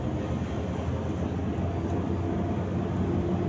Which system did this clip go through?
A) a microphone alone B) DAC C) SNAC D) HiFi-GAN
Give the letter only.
A